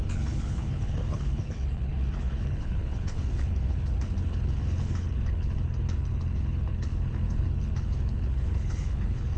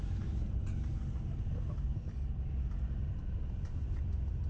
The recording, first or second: second